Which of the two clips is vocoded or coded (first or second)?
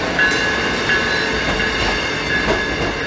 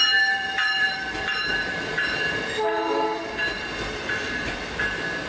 second